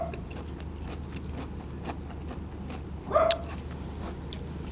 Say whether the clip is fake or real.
real